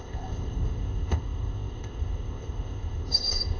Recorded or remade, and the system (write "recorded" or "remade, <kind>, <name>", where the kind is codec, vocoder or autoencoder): remade, codec, ZipCodec